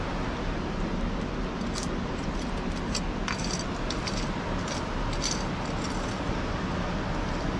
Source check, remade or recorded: recorded